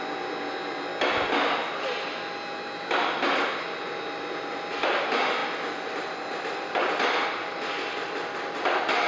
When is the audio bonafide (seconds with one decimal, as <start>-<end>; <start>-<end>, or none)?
0.9-2.8; 5.4-6.3